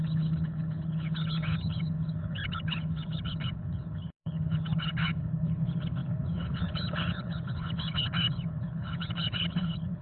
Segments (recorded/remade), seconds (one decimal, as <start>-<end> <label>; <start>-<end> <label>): 0.0-10.0 remade